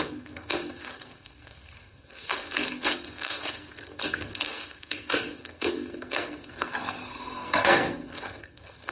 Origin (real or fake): fake